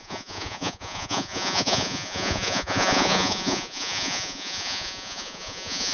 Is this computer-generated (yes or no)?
yes